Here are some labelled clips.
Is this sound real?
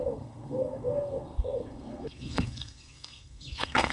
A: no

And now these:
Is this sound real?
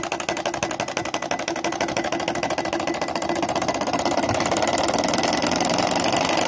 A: yes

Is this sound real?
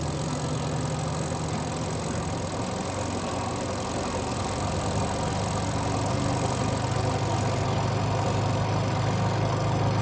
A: yes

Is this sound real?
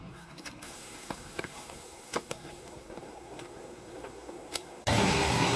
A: no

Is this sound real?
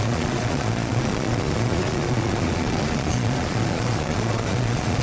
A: no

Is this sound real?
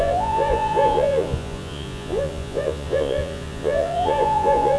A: no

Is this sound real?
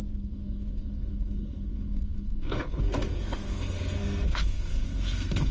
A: no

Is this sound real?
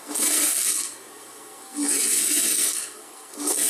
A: no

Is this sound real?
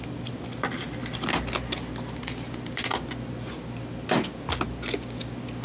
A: yes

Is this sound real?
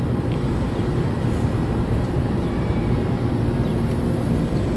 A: no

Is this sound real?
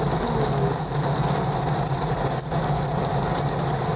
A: yes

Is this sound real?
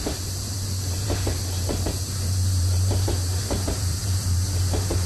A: no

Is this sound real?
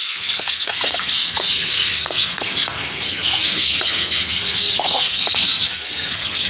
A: no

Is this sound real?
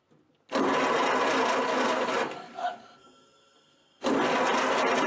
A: yes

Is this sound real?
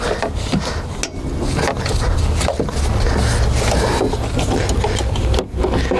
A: yes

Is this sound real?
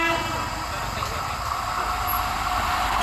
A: yes